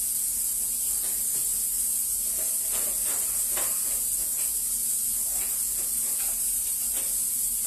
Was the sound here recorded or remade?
recorded